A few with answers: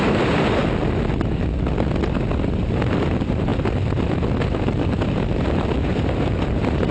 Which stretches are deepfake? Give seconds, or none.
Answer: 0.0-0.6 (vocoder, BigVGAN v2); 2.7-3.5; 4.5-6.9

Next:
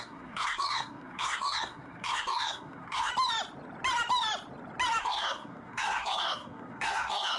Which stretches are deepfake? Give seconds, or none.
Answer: 0.0-3.1 (codec, SNAC); 5.0-7.4

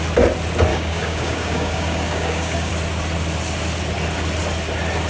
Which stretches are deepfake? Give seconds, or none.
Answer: 0.7-2.7 (codec, DAC)

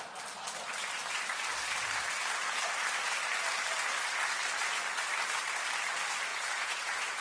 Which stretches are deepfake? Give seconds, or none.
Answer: 6.3-7.2 (vocoder, Vocos)

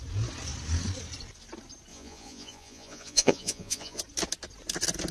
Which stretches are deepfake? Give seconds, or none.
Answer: 1.9-4.0 (vocoder, Vocos)

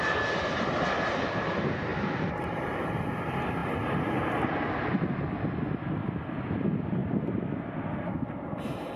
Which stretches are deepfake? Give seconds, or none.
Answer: none

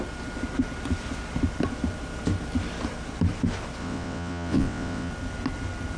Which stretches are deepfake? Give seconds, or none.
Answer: 3.8-5.1 (vocoder, WaveNeXt)